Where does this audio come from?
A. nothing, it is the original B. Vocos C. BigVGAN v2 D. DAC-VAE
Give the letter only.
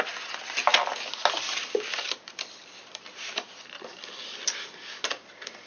A